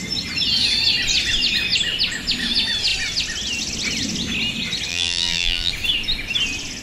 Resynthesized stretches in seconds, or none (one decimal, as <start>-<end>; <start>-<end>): 4.9-5.7